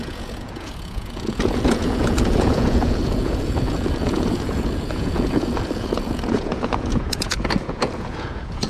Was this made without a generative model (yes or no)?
no